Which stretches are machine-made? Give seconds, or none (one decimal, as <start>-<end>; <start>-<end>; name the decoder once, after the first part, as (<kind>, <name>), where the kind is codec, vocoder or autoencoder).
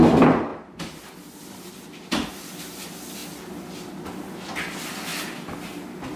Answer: 0.5-2.3 (vocoder, BigVGAN v2)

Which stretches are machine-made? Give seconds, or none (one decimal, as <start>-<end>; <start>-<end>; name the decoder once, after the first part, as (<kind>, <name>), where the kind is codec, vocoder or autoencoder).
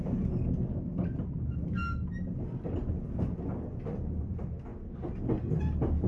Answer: none